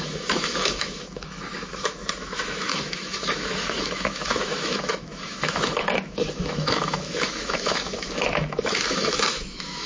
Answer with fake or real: fake